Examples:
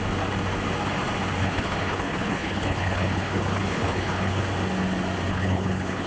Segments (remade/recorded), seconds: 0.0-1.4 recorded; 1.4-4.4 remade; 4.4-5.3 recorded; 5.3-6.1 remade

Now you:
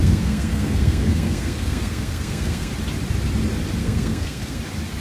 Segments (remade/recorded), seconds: 0.0-2.7 remade; 2.7-3.8 recorded; 3.8-4.6 remade; 4.6-5.0 recorded

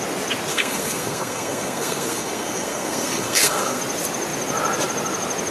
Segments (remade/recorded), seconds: 0.0-0.5 recorded; 0.5-3.8 remade; 3.8-5.5 recorded